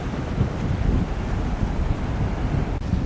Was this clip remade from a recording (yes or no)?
no